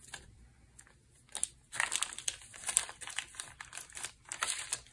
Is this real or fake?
real